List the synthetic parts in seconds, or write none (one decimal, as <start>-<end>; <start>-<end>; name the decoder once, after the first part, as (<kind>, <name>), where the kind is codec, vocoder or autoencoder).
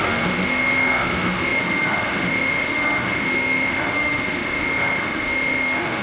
0.0-6.0 (autoencoder, DAC-VAE)